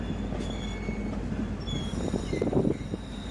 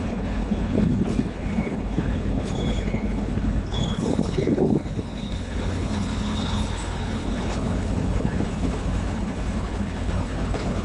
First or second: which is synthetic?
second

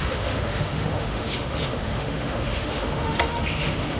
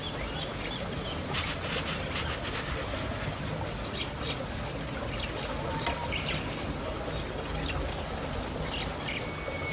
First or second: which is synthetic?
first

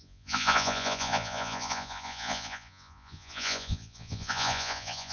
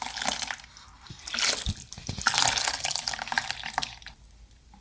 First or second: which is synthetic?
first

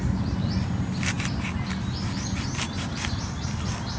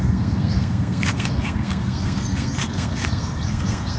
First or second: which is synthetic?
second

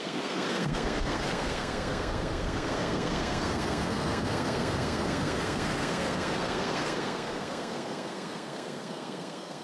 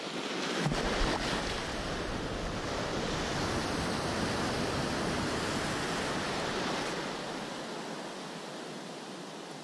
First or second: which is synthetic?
first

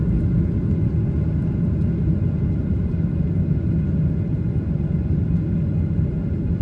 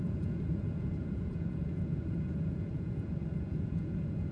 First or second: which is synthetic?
second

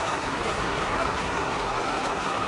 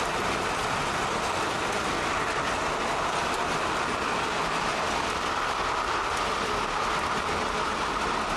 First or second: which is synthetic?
first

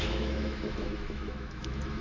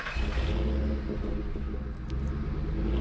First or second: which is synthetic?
first